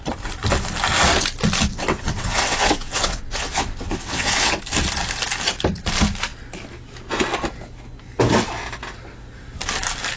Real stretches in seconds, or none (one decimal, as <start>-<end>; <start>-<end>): 0.0-1.7; 4.5-10.2

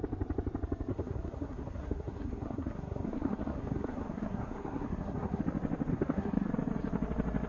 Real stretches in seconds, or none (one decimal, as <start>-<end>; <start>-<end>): 0.0-0.9; 5.4-5.9; 6.5-7.5